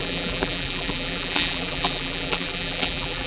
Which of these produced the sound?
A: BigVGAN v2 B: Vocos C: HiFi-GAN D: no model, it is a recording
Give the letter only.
A